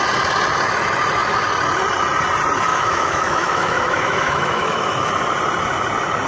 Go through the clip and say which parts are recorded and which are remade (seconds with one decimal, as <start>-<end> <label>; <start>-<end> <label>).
0.0-2.7 recorded; 2.7-5.1 remade; 5.1-6.3 recorded